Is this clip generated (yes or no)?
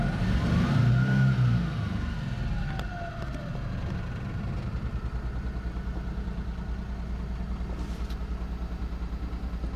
no